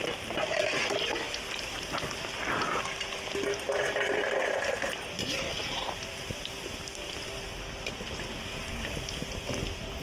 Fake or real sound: real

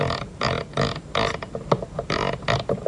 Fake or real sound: real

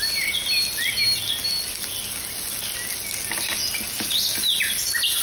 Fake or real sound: real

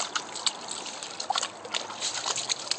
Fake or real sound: real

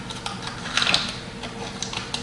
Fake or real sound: real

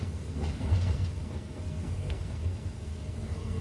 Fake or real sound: fake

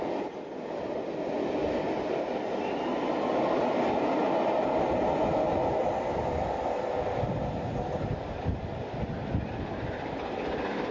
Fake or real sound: real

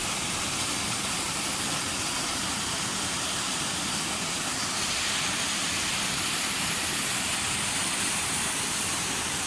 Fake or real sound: real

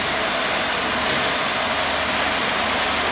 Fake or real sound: real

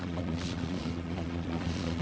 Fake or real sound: fake